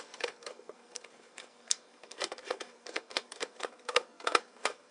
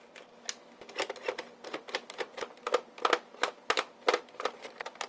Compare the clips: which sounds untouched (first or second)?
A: second